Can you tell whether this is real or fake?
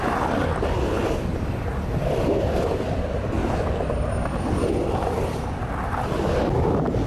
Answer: real